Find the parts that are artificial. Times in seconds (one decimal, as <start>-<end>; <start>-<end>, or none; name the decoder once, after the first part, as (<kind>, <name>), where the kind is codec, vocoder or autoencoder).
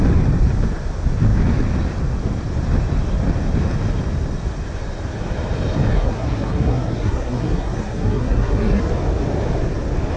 5.9-8.9 (codec, SNAC)